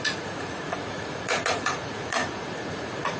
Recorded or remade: remade